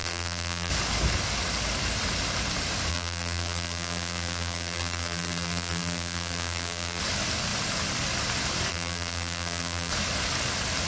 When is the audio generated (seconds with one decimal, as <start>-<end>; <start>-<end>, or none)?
0.0-0.7; 2.9-7.0; 8.7-9.9

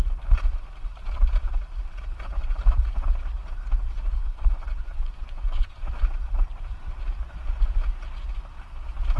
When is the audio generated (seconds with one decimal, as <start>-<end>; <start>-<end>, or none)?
4.2-5.9

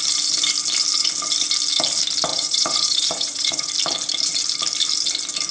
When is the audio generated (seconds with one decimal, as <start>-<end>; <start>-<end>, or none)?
2.3-3.7

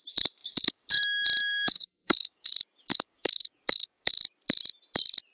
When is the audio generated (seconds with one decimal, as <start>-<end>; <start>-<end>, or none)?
0.4-1.0; 1.4-2.5; 2.9-4.1

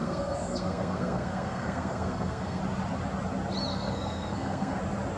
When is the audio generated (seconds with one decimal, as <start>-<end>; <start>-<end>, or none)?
0.0-2.6; 3.7-4.8

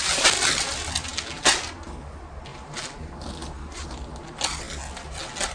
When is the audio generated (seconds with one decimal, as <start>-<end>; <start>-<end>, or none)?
2.5-3.3

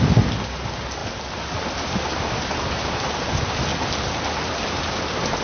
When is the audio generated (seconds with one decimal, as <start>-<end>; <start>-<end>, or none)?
1.0-3.2; 3.7-4.8

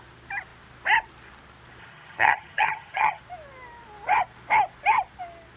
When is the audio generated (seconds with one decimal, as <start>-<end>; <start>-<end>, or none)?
1.8-3.2